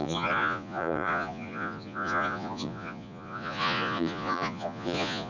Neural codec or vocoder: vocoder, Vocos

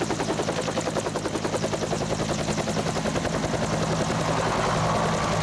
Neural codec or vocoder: none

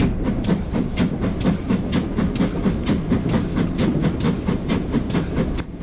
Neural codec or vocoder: none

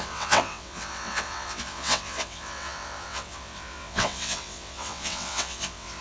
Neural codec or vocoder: vocoder, WaveNeXt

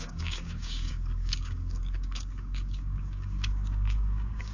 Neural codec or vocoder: codec, DAC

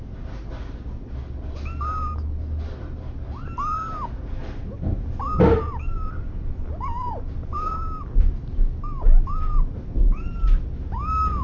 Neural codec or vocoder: none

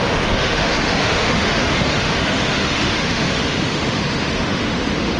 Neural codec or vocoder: autoencoder, DAC-VAE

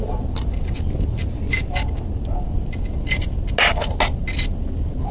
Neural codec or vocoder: none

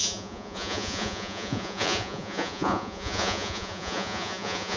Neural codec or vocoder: vocoder, Vocos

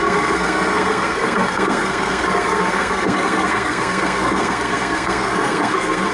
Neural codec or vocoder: codec, SNAC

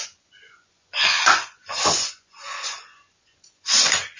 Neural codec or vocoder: vocoder, Vocos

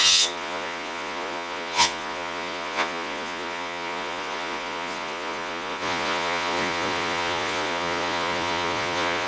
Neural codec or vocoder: vocoder, Vocos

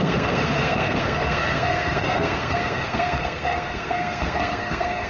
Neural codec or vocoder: codec, SNAC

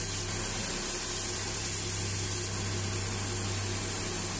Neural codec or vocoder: none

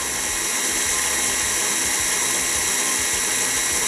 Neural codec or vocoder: none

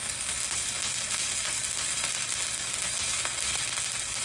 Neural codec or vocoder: none